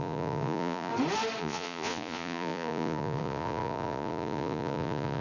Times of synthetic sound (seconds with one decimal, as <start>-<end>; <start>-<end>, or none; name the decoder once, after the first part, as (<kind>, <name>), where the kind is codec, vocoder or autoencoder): 0.0-0.9 (vocoder, Vocos); 1.4-5.2